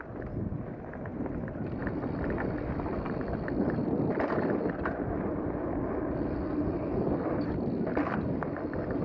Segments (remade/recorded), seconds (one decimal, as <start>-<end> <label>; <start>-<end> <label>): 0.0-9.0 recorded